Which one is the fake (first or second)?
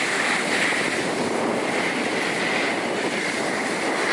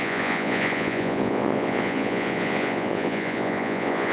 second